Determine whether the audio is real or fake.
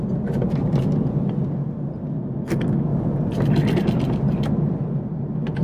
real